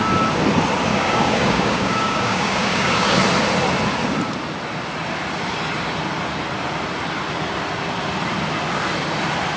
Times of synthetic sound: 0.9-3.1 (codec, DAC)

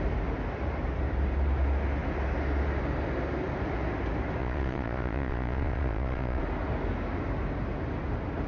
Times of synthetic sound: 4.4-6.4 (vocoder, Vocos)

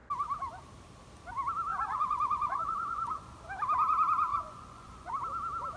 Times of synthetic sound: 1.7-3.3 (vocoder, Vocos); 4.3-5.1

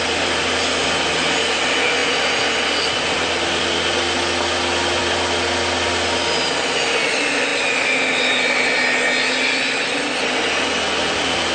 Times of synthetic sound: none

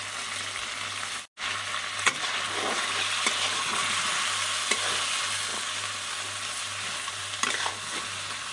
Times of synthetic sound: 7.2-7.7 (vocoder, BigVGAN v2)

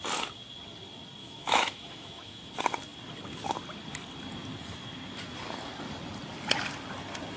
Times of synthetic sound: 1.2-2.5 (autoencoder, DAC-VAE)

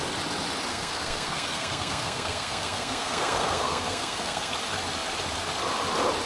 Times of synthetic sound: 0.7-4.5 (codec, SNAC)